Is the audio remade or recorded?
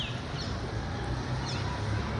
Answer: recorded